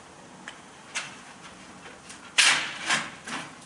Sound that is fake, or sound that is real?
real